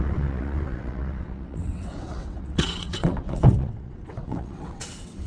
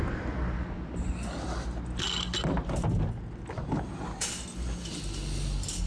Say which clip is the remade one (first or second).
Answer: first